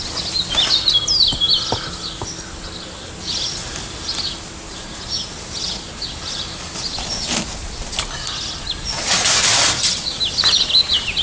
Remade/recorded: recorded